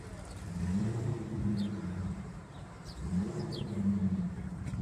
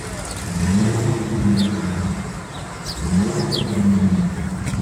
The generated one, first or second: first